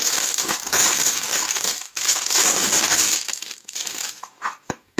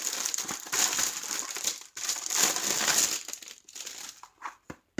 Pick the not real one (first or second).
first